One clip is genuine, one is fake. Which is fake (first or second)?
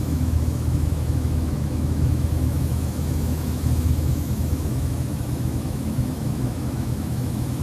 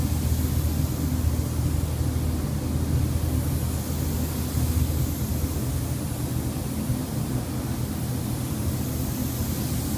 first